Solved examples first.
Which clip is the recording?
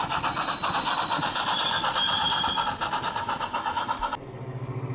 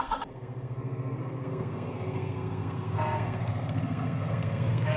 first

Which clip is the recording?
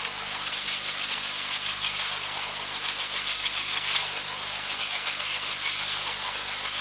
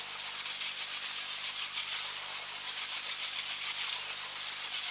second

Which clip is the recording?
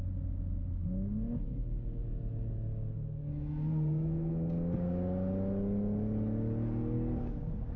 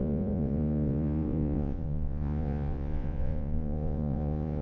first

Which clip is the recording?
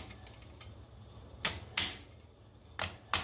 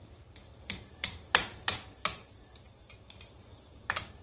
first